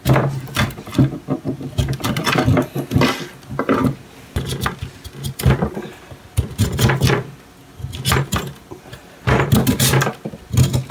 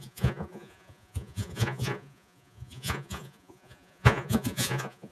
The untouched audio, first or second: first